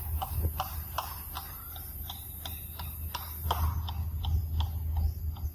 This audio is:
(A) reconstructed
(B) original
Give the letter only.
B